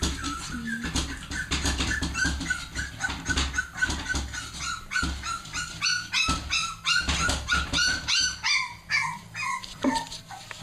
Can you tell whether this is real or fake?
real